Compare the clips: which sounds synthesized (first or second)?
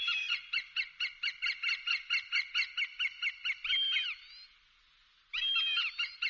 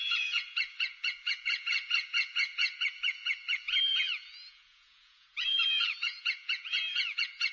second